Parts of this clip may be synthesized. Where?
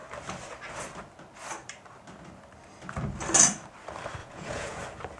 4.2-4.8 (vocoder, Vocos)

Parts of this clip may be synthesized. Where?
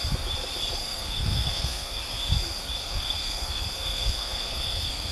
0.8-2.0 (codec, SNAC); 2.8-5.1